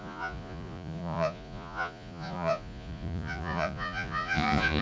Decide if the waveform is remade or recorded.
remade